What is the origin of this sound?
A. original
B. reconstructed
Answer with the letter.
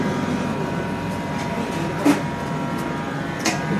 A